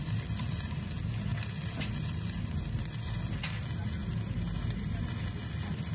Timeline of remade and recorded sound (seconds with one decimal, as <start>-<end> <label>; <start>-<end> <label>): 0.0-5.9 recorded